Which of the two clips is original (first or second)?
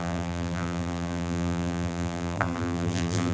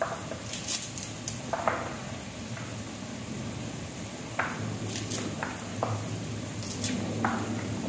second